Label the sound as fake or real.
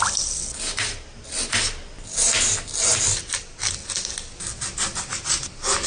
real